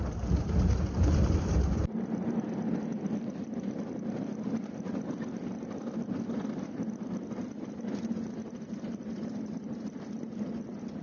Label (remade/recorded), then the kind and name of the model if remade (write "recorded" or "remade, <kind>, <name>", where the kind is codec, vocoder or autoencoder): recorded